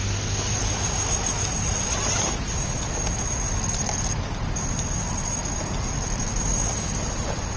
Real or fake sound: real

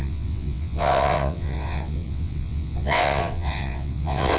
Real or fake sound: fake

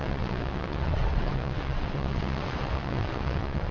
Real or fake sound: fake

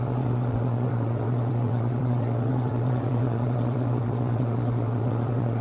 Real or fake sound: fake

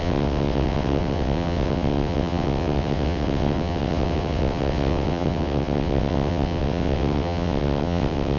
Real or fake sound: fake